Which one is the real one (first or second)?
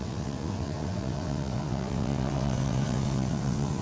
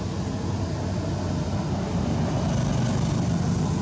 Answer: second